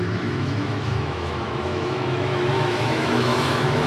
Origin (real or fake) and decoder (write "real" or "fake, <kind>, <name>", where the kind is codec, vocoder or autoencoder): fake, autoencoder, DAC-VAE